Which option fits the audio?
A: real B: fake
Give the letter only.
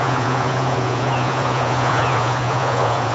B